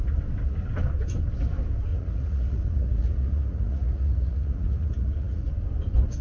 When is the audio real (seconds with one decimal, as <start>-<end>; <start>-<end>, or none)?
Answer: 0.0-1.9; 5.5-6.2